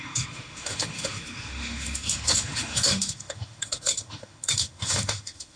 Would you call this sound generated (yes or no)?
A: yes